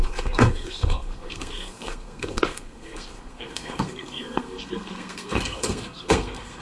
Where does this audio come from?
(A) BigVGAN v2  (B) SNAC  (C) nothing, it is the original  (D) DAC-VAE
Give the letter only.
B